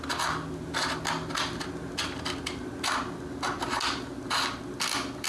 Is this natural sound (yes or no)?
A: yes